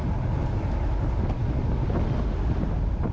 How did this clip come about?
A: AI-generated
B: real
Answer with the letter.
B